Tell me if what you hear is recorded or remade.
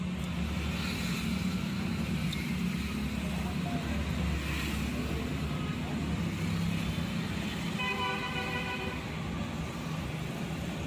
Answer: recorded